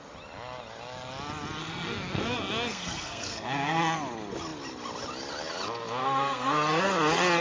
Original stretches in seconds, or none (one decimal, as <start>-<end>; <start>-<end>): 0.0-1.6; 3.8-6.0; 6.8-7.4